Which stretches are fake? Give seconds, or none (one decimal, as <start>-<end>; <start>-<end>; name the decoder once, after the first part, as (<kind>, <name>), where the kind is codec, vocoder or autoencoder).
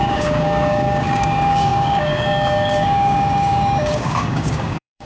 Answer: 0.0-5.1 (codec, DAC)